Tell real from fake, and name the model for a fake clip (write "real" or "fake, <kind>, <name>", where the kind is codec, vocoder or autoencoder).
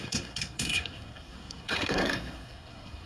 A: fake, codec, SNAC